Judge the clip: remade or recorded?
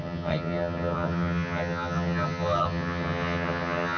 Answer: remade